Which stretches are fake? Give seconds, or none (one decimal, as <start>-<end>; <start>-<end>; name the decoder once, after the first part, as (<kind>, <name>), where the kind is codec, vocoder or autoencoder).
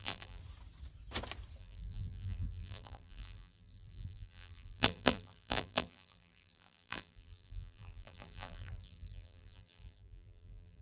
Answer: 0.0-0.4 (vocoder, BigVGAN v2); 1.6-10.8